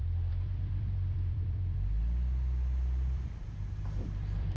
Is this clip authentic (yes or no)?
no